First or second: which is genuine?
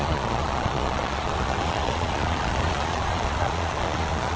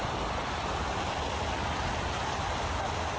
second